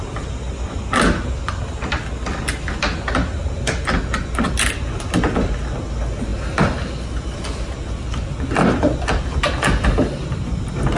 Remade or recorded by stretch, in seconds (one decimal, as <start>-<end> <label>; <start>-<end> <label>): 0.0-11.0 recorded